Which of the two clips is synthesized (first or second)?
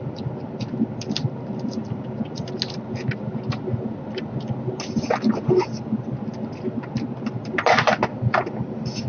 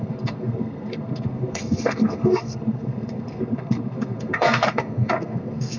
second